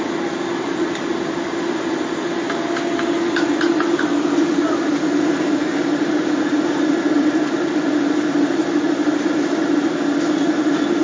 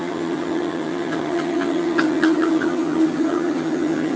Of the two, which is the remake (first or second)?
second